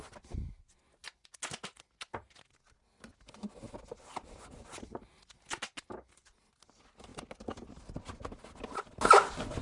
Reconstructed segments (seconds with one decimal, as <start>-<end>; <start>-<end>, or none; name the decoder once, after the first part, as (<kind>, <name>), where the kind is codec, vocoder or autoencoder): none